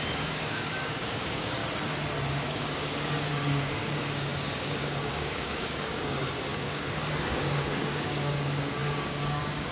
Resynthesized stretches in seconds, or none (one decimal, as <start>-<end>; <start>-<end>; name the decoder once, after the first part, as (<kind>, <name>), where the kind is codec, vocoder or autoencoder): 0.0-1.6 (codec, DAC); 2.3-9.7